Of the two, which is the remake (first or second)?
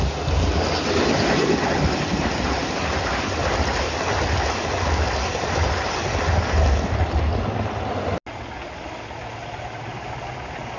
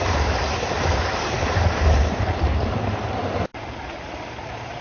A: second